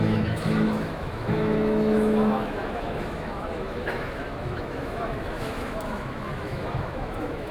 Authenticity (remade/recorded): remade